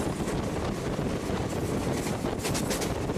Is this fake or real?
real